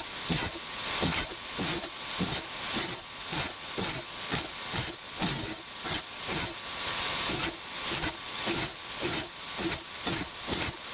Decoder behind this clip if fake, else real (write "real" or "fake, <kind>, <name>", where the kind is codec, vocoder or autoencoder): real